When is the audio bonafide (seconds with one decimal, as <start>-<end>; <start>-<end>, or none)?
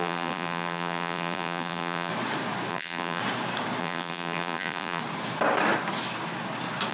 2.1-2.7; 3.2-3.8; 5.0-6.9